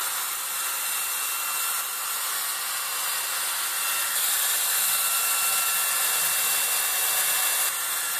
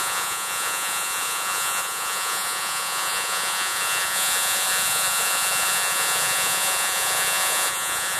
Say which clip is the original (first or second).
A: first